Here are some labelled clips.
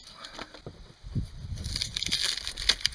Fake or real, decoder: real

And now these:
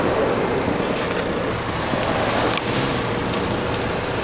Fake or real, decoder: real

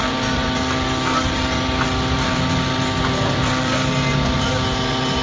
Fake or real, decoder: real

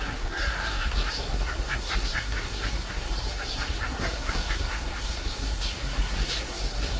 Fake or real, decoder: fake, codec, SNAC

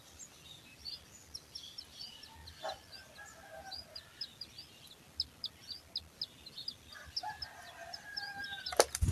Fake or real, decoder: real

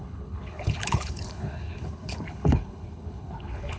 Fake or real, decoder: fake, codec, HILCodec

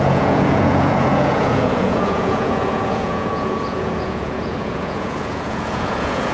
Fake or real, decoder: fake, vocoder, Vocos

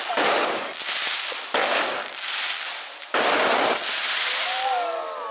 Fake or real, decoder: real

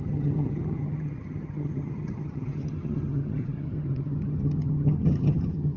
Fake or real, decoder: fake, vocoder, HiFi-GAN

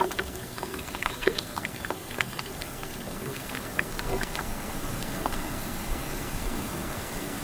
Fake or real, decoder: fake, codec, SNAC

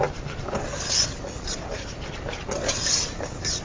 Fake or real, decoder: real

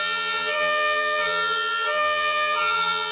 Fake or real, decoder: fake, vocoder, HiFi-GAN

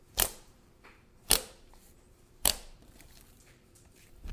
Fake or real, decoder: fake, vocoder, BigVGAN v2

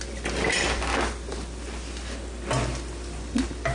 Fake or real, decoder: real